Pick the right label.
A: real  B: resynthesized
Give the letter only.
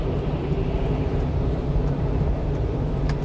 B